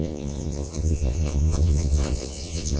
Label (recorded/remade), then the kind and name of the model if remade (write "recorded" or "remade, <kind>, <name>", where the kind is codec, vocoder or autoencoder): remade, vocoder, Vocos